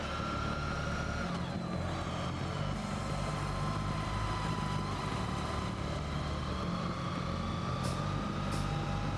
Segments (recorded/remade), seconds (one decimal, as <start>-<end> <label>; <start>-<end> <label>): 0.0-3.0 recorded; 3.0-4.6 remade; 4.6-9.2 recorded